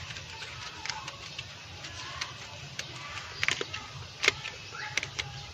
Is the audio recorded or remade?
recorded